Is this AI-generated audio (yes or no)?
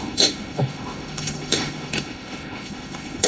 yes